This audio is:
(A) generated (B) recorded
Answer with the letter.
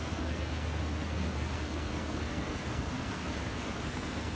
A